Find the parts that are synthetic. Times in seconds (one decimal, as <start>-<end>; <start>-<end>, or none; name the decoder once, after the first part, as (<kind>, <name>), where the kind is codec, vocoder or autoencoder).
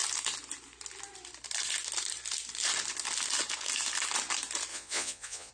4.7-5.5 (vocoder, Vocos)